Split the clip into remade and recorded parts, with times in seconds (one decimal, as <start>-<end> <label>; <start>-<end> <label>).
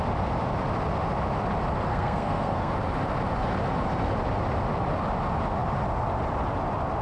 0.0-1.9 recorded; 1.9-2.7 remade; 2.7-7.0 recorded